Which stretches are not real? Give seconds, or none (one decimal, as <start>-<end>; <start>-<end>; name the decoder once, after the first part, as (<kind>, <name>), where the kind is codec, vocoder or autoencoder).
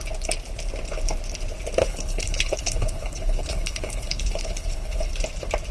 1.8-5.2 (codec, HILCodec)